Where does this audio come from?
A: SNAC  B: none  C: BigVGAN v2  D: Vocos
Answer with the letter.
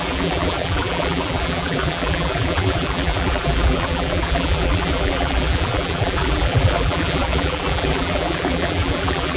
C